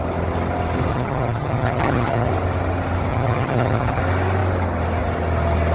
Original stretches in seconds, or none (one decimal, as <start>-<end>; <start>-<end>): 0.0-0.9; 2.3-3.1; 4.0-5.7